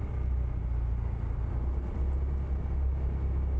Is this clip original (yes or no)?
yes